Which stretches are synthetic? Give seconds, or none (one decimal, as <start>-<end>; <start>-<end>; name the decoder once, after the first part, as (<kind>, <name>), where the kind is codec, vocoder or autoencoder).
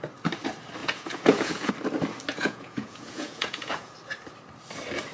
0.8-1.7 (vocoder, Vocos); 2.3-3.9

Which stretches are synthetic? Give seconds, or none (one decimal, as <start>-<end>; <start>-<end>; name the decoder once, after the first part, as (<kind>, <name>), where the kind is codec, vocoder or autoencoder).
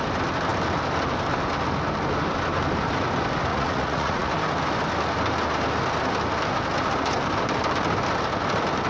3.5-4.3 (vocoder, Vocos)